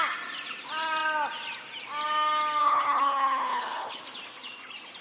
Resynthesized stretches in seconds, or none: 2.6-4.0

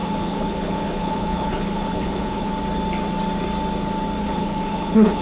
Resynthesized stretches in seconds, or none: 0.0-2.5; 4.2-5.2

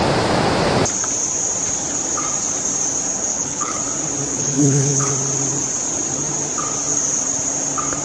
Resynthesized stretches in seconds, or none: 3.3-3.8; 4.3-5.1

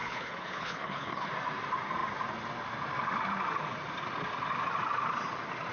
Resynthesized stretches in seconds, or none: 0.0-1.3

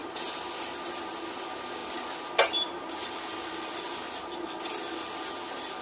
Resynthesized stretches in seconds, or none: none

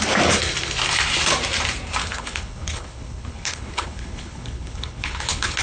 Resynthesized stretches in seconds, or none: 2.0-5.6

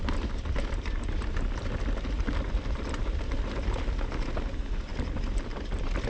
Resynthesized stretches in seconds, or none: none

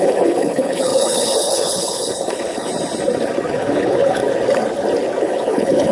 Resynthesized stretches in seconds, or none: 0.0-2.7; 3.5-4.2; 5.2-5.9